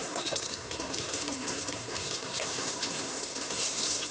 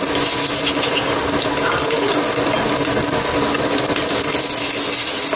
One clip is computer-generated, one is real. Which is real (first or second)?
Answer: second